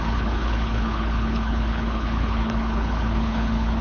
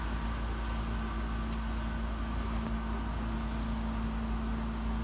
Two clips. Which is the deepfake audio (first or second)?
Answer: first